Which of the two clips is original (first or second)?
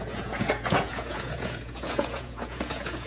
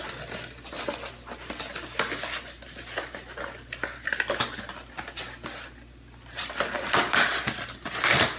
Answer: second